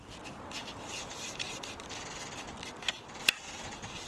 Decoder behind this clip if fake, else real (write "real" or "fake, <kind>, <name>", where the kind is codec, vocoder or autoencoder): real